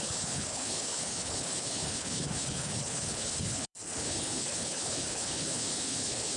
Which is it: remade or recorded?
remade